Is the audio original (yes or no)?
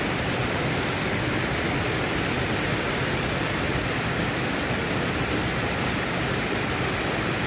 yes